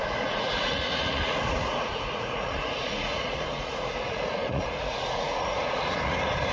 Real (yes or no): no